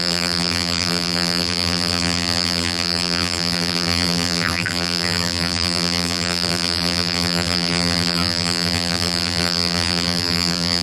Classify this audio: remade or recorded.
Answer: remade